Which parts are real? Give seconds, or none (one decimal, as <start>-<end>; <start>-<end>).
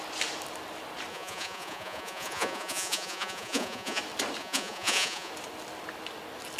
0.0-1.1; 4.0-4.4; 5.3-6.6